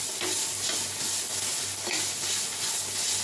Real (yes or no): yes